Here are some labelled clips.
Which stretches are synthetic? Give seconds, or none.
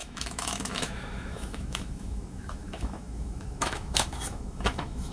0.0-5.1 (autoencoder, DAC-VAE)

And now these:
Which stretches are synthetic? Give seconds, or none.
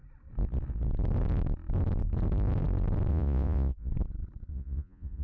3.1-3.9 (vocoder, Vocos); 4.5-5.2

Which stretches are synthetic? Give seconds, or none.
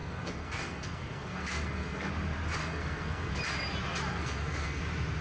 0.0-2.1 (codec, SNAC); 2.6-3.3; 4.1-4.8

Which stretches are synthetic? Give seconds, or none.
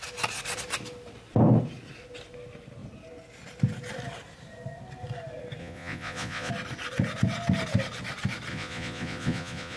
5.6-6.5 (vocoder, Vocos); 8.5-9.8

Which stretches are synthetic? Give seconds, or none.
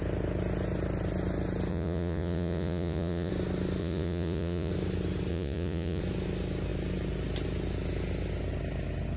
1.7-3.3 (vocoder, Vocos); 3.8-4.7; 5.3-6.0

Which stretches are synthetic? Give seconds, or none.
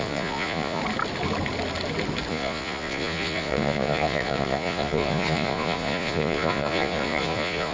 0.0-0.8 (vocoder, Vocos); 2.3-7.7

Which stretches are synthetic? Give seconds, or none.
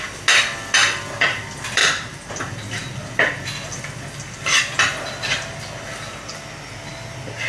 1.8-2.3 (vocoder, BigVGAN v2)